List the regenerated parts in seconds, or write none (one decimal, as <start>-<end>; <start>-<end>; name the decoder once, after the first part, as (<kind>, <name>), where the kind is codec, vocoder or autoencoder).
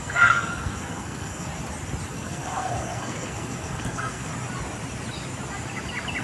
0.0-1.5 (codec, SNAC); 2.1-4.3